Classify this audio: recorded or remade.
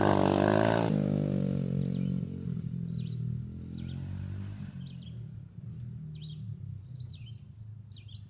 recorded